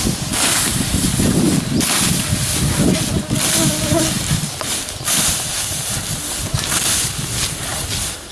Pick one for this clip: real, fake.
real